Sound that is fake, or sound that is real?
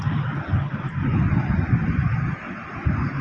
real